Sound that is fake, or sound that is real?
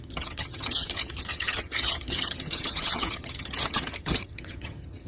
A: fake